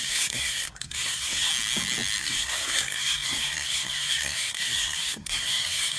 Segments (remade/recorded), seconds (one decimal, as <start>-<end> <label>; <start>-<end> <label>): 0.0-1.5 remade; 1.5-2.2 recorded; 2.2-6.0 remade